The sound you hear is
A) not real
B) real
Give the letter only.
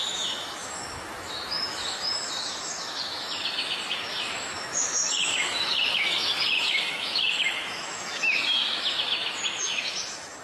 A